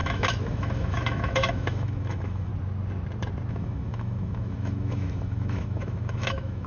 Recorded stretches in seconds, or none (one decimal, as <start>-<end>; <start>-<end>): 2.5-3.5